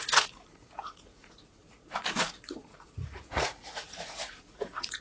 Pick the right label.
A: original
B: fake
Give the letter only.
B